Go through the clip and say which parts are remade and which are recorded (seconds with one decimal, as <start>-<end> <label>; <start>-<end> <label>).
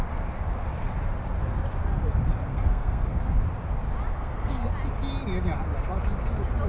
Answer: 0.0-2.5 recorded; 2.5-3.2 remade; 3.2-4.1 recorded; 4.1-4.7 remade; 4.7-6.7 recorded